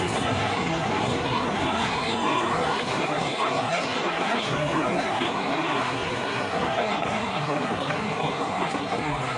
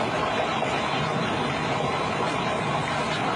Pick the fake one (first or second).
first